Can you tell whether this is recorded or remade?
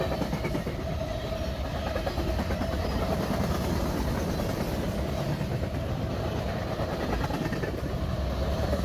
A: recorded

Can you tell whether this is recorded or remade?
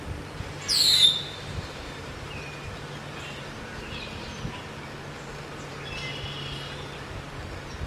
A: recorded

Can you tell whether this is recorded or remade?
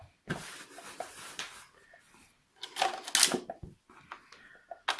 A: recorded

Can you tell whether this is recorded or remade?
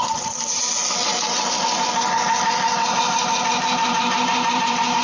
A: remade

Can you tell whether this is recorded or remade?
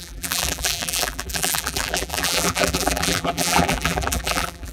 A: remade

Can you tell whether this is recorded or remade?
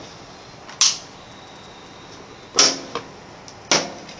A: recorded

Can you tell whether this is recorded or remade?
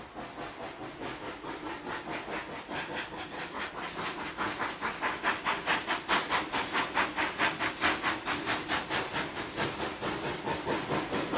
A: recorded